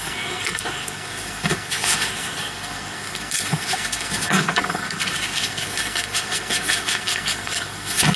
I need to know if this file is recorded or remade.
remade